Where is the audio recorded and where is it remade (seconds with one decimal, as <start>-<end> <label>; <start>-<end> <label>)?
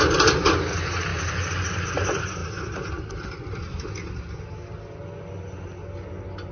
0.0-1.1 recorded; 1.1-1.9 remade; 1.9-6.5 recorded